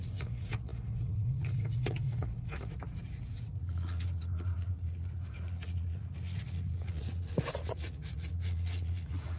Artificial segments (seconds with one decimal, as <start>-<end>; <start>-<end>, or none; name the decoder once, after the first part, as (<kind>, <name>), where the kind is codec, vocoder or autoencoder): 0.0-9.4 (vocoder, Vocos)